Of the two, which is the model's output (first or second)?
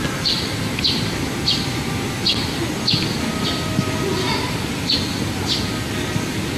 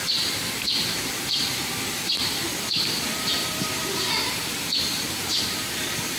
second